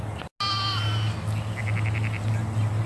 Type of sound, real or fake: real